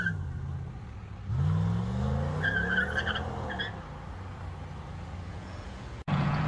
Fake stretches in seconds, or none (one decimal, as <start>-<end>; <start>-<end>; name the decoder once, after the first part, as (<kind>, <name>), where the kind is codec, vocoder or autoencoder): 5.3-6.5 (vocoder, Vocos)